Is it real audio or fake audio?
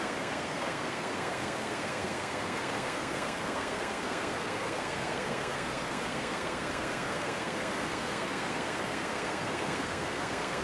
fake